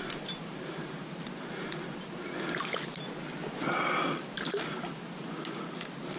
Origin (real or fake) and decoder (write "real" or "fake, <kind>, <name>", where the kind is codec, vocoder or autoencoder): real